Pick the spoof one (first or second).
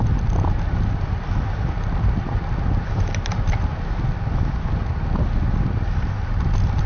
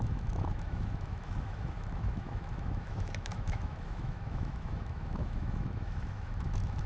second